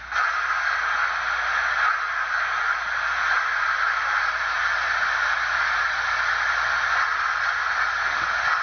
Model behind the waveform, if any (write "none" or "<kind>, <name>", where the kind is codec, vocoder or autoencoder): none